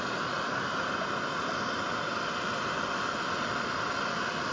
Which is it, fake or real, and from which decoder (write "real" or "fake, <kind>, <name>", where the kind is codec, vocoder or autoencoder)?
real